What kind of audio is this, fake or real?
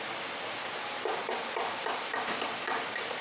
fake